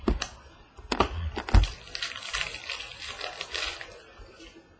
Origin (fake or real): real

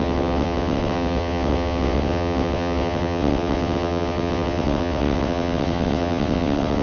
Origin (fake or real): fake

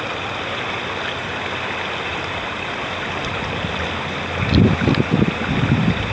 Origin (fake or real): real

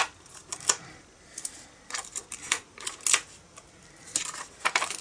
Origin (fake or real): real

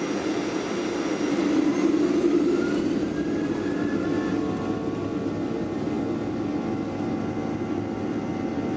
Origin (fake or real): real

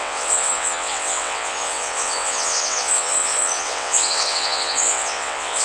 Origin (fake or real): fake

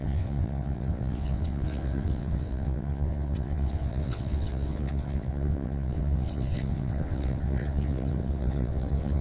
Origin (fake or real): fake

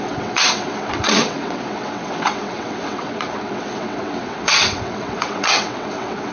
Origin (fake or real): fake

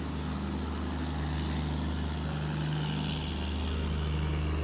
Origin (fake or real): real